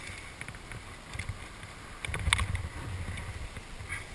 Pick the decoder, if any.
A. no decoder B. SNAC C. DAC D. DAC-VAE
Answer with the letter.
A